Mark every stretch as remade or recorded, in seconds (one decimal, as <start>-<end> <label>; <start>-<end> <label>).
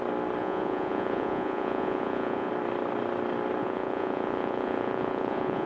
0.0-0.4 recorded; 0.4-2.5 remade; 2.5-3.6 recorded; 3.6-5.7 remade